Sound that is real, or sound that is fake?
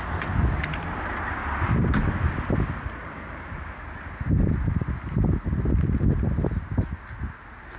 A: real